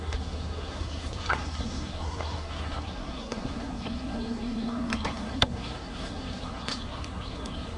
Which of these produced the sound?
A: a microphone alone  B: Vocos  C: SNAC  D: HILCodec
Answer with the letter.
C